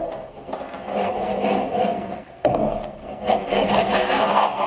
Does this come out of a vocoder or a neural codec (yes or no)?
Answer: yes